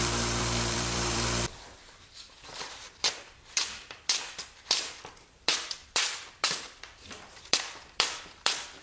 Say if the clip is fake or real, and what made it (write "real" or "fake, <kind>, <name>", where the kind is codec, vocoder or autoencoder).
fake, vocoder, BigVGAN v2